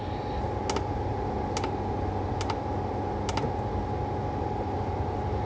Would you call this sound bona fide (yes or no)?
yes